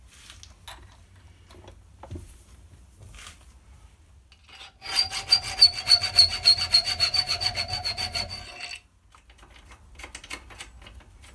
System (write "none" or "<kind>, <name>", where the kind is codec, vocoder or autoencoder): none